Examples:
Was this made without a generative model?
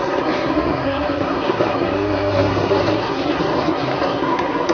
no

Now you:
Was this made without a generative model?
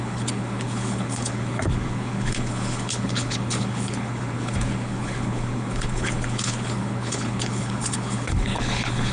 no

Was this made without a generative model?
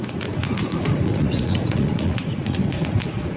no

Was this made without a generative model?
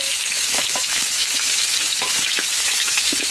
no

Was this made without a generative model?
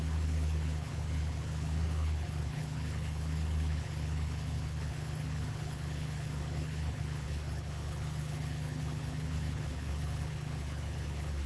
no